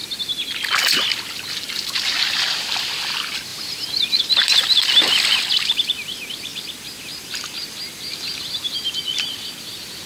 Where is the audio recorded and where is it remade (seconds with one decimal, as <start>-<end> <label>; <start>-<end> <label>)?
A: 0.0-10.1 recorded